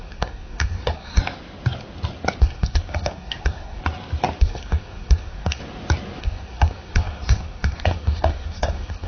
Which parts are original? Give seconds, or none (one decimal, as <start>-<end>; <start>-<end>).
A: 1.2-2.4; 3.8-4.4; 5.6-6.2

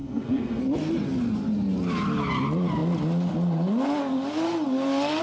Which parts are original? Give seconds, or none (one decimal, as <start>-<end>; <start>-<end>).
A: 0.6-5.2